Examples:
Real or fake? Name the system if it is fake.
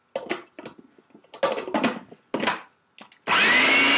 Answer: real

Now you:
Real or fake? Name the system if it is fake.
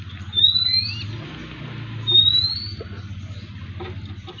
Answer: real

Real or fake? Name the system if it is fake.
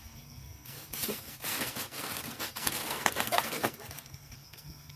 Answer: fake, codec, SNAC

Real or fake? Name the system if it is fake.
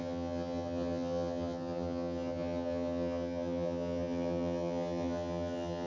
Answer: fake, vocoder, HiFi-GAN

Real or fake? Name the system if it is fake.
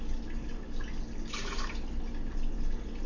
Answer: real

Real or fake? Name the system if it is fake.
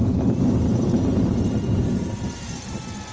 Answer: real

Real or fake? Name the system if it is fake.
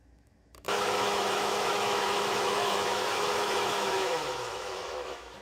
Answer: fake, autoencoder, DAC-VAE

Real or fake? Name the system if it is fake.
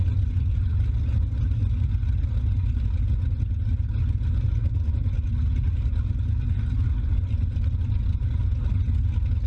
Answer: real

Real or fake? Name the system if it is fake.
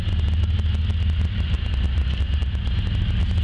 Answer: real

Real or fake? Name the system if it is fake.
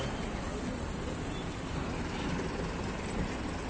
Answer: real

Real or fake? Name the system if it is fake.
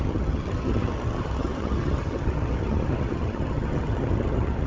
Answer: fake, vocoder, HiFi-GAN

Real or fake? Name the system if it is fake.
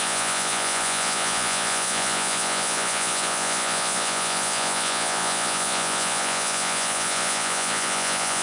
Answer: fake, vocoder, Vocos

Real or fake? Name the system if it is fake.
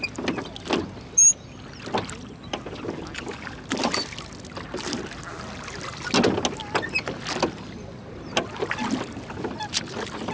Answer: real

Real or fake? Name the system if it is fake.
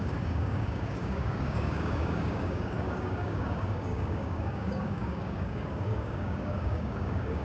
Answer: fake, codec, DAC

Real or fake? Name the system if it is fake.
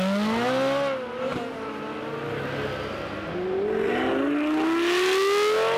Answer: real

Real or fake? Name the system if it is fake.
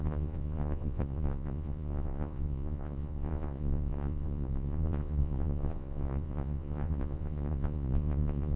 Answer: fake, vocoder, Vocos